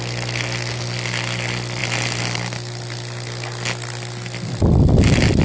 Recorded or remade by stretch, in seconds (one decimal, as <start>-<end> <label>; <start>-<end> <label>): 0.0-5.4 recorded